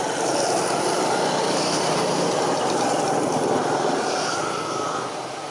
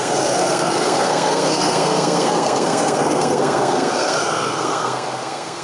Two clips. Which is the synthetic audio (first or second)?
second